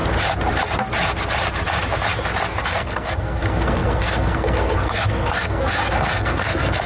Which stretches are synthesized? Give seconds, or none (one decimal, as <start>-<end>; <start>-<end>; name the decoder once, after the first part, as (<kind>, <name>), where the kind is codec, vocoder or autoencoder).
2.6-6.9 (codec, SNAC)